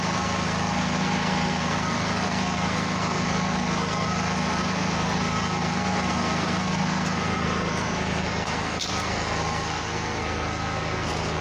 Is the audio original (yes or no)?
no